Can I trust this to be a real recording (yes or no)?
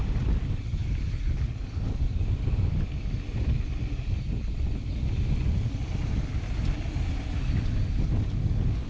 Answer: yes